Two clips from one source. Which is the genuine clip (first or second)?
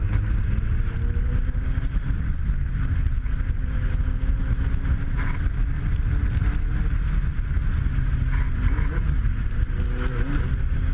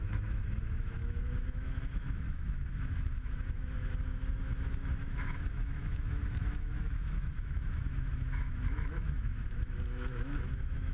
first